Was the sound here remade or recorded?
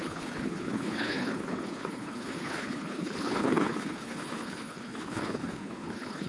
remade